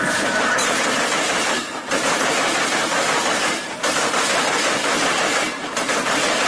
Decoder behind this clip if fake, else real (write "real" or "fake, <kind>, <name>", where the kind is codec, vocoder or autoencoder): fake, vocoder, BigVGAN v2